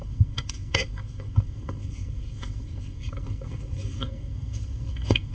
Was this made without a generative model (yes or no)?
no